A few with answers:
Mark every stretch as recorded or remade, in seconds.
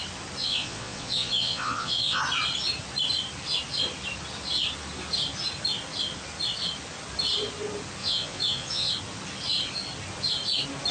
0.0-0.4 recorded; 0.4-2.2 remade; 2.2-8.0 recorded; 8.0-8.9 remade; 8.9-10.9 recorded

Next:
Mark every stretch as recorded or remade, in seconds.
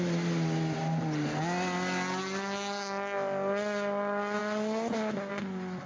0.0-5.9 recorded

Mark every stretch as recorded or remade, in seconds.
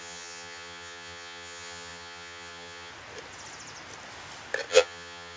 0.0-2.9 remade; 2.9-4.7 recorded; 4.7-5.4 remade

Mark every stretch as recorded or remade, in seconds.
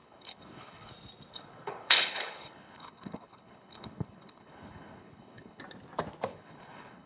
0.0-0.9 remade; 0.9-1.3 recorded; 1.3-5.6 remade; 5.6-6.3 recorded; 6.3-7.1 remade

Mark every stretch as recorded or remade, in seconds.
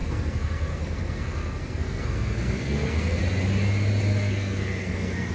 0.0-3.2 remade; 3.2-4.1 recorded; 4.1-5.3 remade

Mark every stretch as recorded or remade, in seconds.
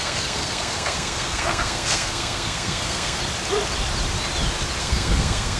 0.0-3.2 remade; 3.2-4.8 recorded; 4.8-5.6 remade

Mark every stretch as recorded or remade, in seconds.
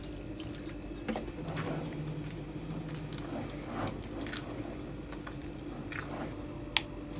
0.0-5.4 recorded; 5.4-6.5 remade; 6.5-7.2 recorded